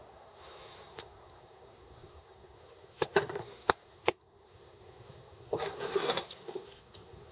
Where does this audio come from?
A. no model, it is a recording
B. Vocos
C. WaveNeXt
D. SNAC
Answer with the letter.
D